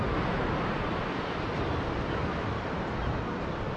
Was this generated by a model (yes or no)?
no